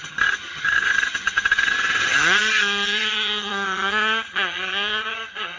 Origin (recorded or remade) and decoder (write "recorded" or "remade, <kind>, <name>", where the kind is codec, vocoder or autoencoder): remade, vocoder, HiFi-GAN